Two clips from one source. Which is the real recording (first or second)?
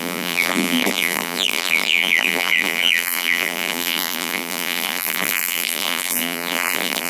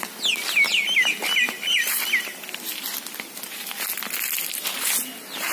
second